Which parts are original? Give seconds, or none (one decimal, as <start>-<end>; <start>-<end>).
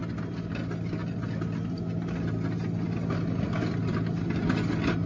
0.0-5.1